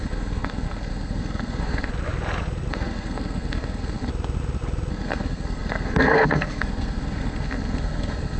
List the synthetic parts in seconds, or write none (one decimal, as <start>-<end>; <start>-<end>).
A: 0.0-1.9; 2.7-4.1; 4.9-8.4